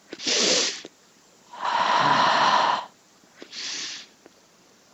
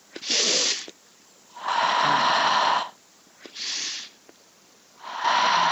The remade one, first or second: first